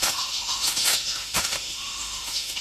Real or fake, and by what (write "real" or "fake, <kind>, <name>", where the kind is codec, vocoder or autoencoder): fake, autoencoder, DAC-VAE